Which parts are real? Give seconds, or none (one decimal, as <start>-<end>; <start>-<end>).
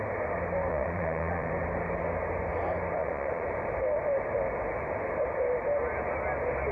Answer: 0.0-0.7; 1.5-3.0; 3.5-6.7